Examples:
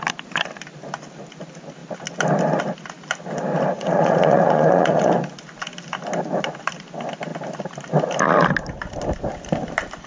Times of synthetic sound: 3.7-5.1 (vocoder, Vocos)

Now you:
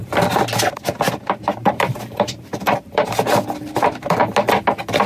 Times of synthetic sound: 1.6-3.2 (vocoder, BigVGAN v2)

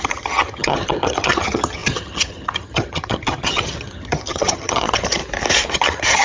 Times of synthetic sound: 0.0-5.2 (vocoder, HiFi-GAN); 5.7-6.2

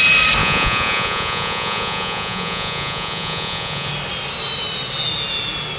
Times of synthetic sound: 0.4-3.9 (vocoder, Vocos)

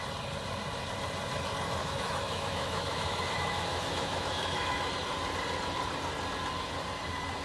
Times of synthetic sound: 1.8-4.8 (autoencoder, DAC-VAE)

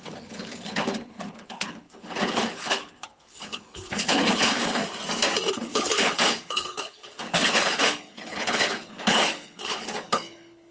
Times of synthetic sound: 0.0-4.8 (codec, HILCodec); 5.5-10.7

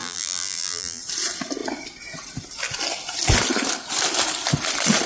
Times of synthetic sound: 0.0-1.0 (vocoder, BigVGAN v2)

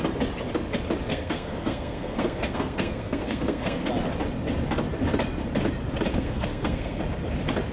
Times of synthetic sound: 1.1-3.9 (codec, SNAC); 6.1-7.0